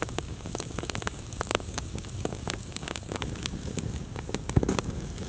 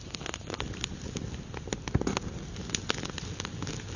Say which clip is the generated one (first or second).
first